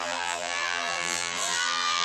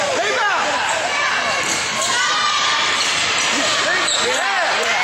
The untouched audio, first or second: second